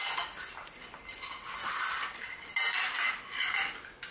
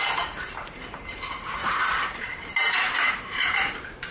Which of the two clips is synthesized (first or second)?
second